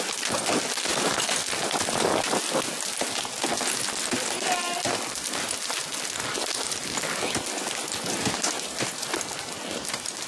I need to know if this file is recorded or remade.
recorded